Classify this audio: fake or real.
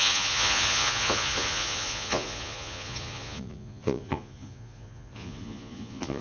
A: fake